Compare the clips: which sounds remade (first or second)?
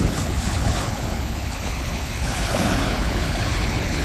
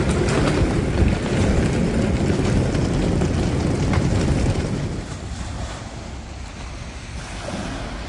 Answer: first